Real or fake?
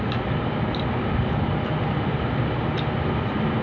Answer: real